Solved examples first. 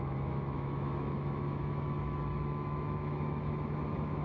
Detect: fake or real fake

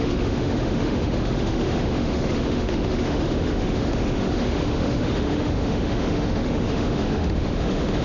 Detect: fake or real fake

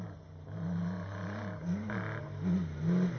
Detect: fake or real real